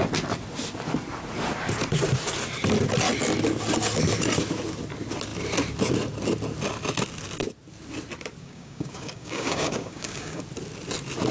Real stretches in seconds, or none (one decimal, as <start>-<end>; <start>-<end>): 0.0-8.4; 10.4-11.3